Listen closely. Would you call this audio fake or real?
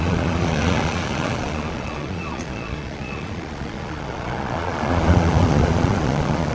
fake